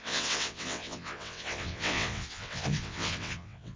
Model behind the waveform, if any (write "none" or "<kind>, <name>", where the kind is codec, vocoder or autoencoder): vocoder, WaveNeXt